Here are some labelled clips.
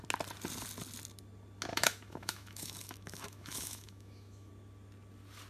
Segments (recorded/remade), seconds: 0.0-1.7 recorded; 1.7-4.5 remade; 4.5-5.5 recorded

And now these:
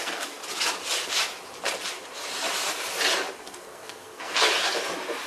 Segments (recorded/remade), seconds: 0.0-0.4 remade; 0.4-3.4 recorded; 3.4-4.5 remade; 4.5-5.3 recorded

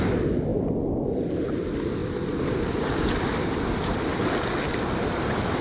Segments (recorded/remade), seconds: 0.0-5.6 recorded

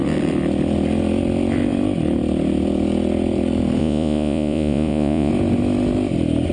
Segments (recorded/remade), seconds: 0.0-3.8 recorded; 3.8-5.3 remade; 5.3-6.5 recorded

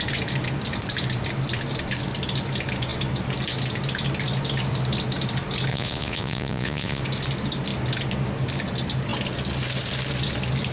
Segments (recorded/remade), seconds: 0.0-5.7 recorded; 5.7-7.0 remade; 7.0-10.7 recorded

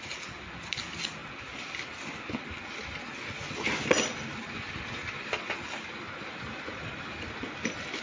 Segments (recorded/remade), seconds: 0.0-8.0 recorded

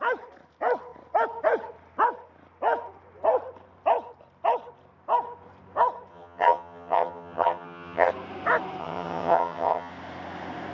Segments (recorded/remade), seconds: 0.0-6.1 recorded; 6.1-8.1 remade; 8.1-8.8 recorded; 8.8-9.9 remade; 9.9-10.7 recorded

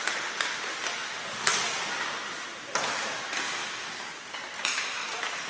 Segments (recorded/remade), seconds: 0.0-5.5 recorded